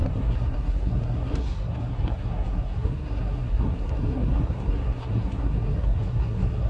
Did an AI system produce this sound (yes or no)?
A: yes